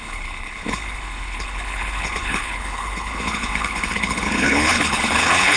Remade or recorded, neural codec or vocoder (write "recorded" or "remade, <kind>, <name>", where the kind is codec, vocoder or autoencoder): remade, codec, HILCodec